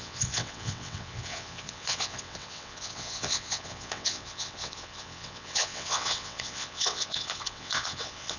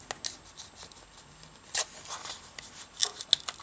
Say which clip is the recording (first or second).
second